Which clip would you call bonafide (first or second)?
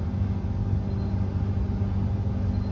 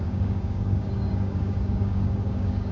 first